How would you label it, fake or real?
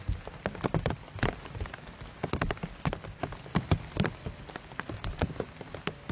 real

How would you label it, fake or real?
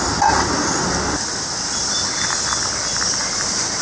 real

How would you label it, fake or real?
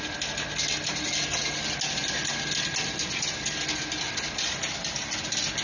real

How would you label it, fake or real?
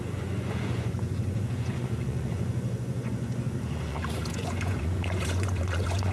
fake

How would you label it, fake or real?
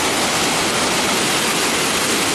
real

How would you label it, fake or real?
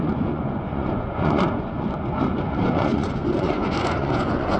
fake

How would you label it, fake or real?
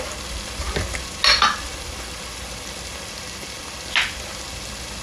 real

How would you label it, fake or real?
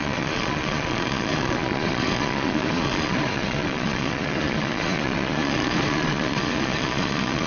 fake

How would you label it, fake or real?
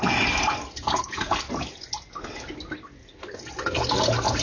real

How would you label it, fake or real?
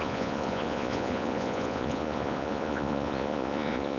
fake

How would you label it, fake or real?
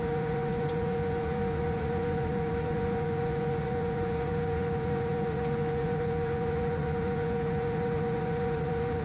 fake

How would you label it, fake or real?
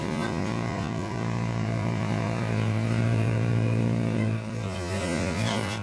fake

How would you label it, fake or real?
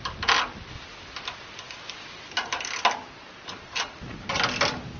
real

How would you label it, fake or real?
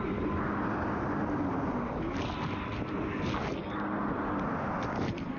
real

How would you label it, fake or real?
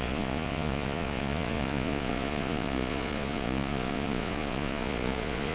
fake